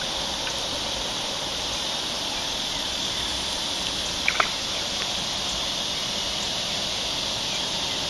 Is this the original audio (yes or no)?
yes